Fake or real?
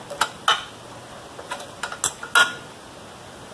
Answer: real